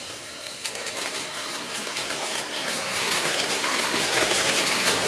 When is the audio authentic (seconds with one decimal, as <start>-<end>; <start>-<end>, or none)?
none